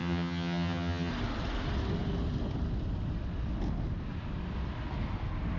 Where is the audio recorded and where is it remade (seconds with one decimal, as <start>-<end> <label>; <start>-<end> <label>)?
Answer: 0.0-1.1 remade; 1.1-5.6 recorded